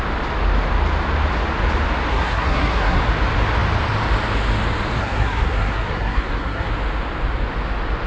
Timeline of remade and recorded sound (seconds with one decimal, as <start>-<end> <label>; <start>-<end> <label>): 0.0-2.1 recorded; 2.1-3.0 remade; 3.0-5.0 recorded; 5.0-6.7 remade; 6.7-8.1 recorded